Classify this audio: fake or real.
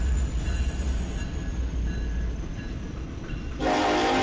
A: real